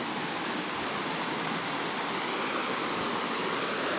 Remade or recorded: recorded